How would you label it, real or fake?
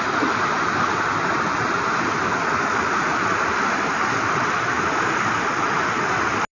real